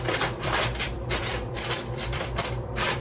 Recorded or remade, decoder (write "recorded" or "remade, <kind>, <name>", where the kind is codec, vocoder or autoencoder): remade, vocoder, BigVGAN v2